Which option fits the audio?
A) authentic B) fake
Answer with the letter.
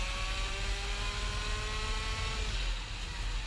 A